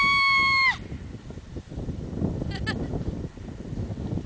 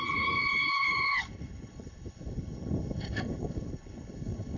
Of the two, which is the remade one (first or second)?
second